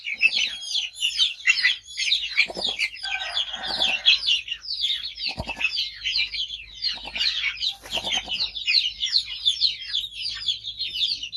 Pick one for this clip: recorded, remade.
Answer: recorded